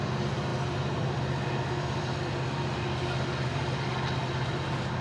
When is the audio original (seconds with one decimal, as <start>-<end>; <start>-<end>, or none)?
0.0-5.0